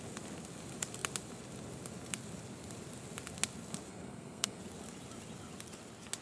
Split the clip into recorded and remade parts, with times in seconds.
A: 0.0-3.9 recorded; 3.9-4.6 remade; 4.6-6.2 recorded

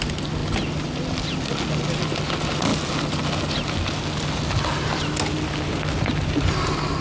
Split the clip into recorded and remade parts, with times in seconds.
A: 0.0-7.0 recorded

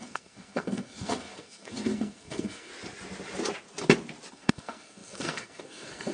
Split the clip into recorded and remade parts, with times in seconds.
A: 0.0-2.7 remade; 2.7-4.3 recorded; 4.3-6.1 remade

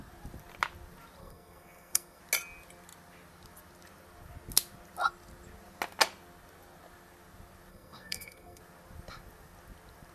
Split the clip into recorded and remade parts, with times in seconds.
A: 0.0-1.2 recorded; 1.2-2.2 remade; 2.2-7.7 recorded; 7.7-8.6 remade; 8.6-10.1 recorded

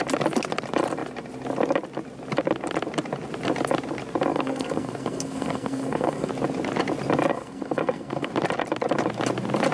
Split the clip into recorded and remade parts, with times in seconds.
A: 0.0-4.3 recorded; 4.3-6.3 remade; 6.3-7.3 recorded; 7.3-8.3 remade; 8.3-9.7 recorded

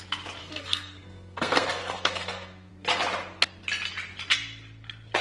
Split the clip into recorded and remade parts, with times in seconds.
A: 0.0-0.4 recorded; 0.4-2.7 remade; 2.7-5.2 recorded

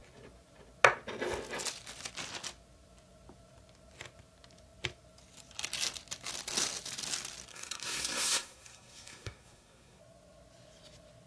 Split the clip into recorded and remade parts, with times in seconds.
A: 0.0-7.5 recorded; 7.5-10.0 remade; 10.0-11.3 recorded